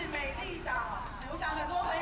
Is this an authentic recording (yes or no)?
yes